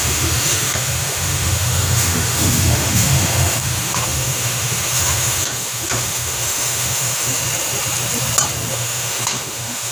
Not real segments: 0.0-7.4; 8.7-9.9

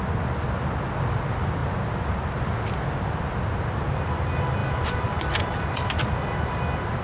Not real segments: none